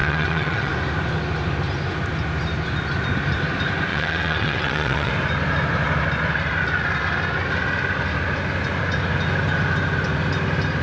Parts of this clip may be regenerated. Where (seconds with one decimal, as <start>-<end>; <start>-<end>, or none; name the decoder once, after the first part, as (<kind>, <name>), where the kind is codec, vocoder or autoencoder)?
0.0-0.7 (vocoder, WaveNeXt); 3.9-5.1